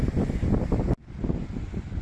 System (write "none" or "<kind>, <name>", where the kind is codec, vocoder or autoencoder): none